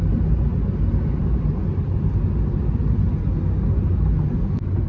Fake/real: real